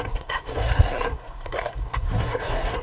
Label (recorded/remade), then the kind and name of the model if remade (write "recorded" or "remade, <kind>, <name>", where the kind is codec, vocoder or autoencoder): remade, codec, SNAC